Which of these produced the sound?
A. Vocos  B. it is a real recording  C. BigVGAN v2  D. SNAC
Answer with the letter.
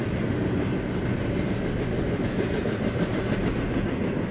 B